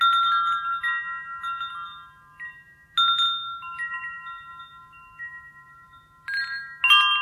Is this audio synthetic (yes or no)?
no